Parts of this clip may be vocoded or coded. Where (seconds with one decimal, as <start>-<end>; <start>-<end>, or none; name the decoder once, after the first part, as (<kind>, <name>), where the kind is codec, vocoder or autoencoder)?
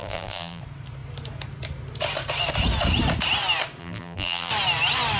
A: 0.0-0.6 (vocoder, BigVGAN v2); 3.8-4.5